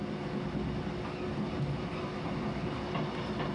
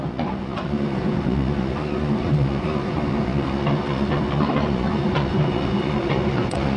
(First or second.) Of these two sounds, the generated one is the second